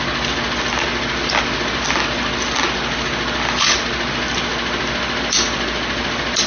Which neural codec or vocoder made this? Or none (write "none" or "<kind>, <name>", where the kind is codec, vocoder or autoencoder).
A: none